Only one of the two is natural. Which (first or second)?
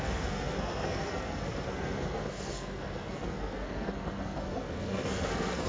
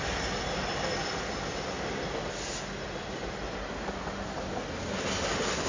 second